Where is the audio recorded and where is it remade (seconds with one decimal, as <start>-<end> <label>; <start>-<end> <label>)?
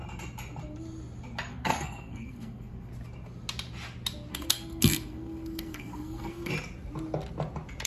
0.0-1.5 recorded; 1.5-2.9 remade; 2.9-4.3 recorded; 4.3-6.5 remade; 6.5-7.9 recorded